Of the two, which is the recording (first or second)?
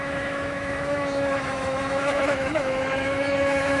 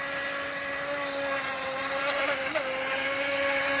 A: second